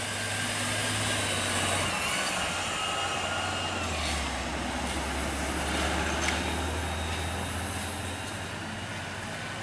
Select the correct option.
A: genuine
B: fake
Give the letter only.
A